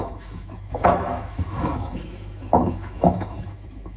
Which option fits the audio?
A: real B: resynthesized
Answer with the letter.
B